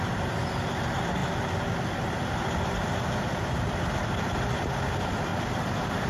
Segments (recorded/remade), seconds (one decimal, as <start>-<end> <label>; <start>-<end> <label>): 0.0-4.0 recorded; 4.0-4.6 remade; 4.6-5.3 recorded; 5.3-6.1 remade